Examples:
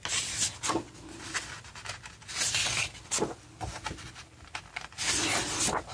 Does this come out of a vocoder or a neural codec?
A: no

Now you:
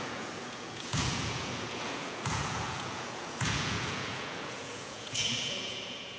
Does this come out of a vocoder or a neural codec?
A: yes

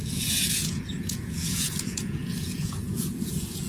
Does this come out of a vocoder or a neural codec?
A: yes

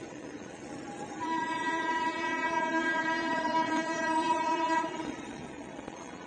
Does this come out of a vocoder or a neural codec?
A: yes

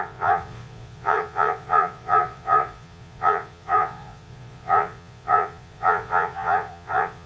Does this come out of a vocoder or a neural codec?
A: yes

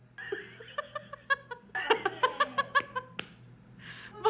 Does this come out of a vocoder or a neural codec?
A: no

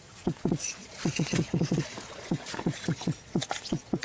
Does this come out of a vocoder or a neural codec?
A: yes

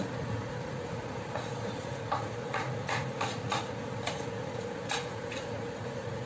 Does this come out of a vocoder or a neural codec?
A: yes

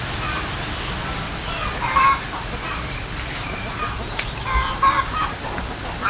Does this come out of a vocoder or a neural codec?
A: no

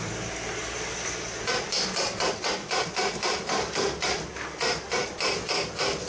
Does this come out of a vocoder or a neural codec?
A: no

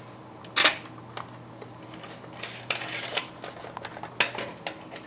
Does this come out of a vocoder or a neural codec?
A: no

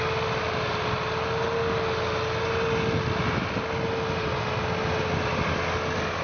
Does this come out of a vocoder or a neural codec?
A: no